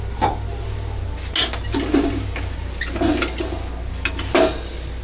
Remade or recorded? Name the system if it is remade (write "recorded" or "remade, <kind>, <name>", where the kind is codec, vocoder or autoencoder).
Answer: recorded